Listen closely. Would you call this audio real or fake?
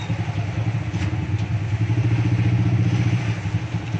real